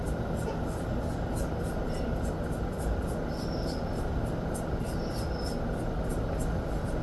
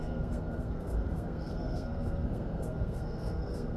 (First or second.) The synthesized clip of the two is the second